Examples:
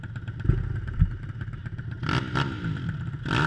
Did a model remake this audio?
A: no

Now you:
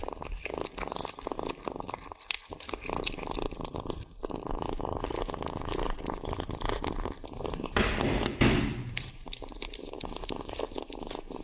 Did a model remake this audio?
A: yes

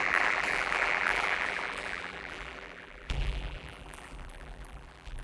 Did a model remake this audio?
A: yes